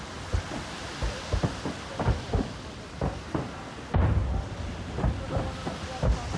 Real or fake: real